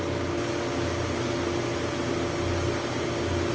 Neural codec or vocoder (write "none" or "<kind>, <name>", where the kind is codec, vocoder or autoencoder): none